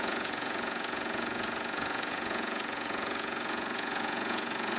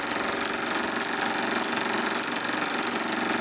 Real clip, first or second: second